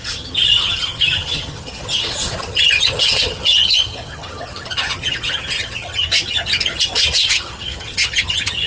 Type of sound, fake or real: fake